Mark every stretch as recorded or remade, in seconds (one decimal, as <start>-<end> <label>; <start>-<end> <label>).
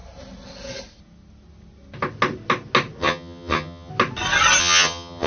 0.0-3.0 recorded; 3.0-3.9 remade; 3.9-4.6 recorded; 4.6-5.3 remade